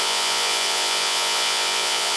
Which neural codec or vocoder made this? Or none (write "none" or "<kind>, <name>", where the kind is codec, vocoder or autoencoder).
vocoder, Vocos